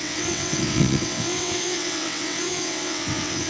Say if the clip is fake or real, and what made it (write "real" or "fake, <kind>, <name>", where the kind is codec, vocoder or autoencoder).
fake, vocoder, WaveNeXt